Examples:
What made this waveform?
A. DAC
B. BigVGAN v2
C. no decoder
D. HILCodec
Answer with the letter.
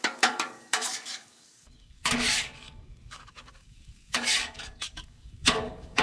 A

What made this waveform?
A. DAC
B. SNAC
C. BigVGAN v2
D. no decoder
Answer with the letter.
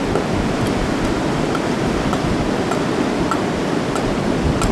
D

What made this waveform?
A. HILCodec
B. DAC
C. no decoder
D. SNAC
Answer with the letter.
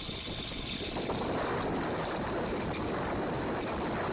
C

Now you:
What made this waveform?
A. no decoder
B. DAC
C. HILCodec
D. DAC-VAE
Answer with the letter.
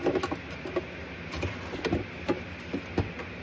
A